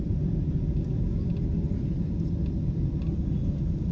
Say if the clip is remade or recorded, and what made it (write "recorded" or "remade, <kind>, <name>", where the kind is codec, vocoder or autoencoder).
recorded